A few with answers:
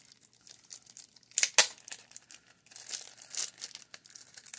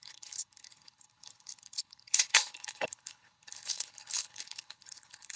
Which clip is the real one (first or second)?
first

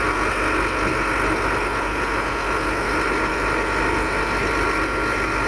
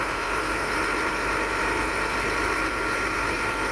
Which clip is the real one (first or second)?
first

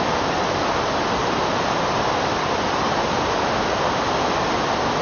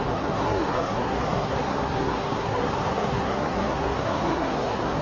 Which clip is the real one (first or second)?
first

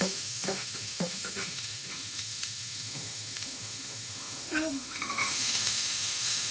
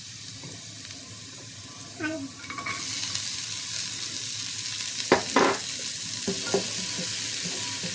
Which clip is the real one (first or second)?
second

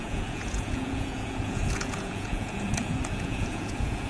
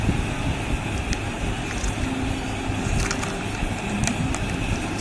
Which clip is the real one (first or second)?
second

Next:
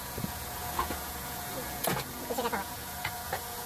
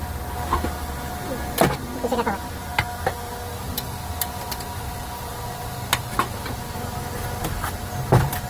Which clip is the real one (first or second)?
second